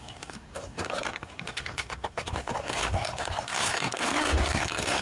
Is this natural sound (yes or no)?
no